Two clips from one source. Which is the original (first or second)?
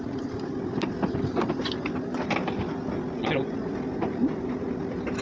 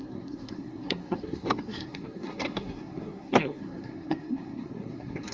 first